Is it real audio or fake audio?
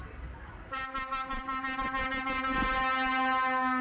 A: real